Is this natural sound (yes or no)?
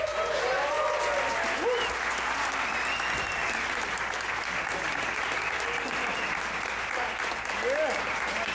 yes